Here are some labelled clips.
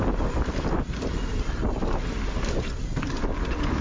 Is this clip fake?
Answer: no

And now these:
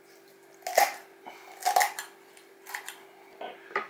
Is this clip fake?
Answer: no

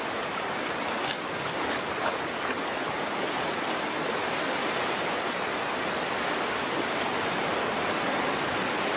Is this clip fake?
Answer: no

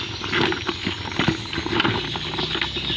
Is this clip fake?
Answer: no